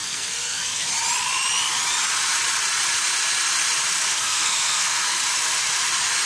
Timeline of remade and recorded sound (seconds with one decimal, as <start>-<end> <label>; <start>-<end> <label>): 0.0-0.9 remade; 0.9-4.1 recorded; 4.1-5.2 remade; 5.2-6.3 recorded